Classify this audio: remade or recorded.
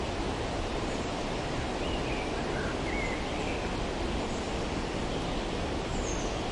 recorded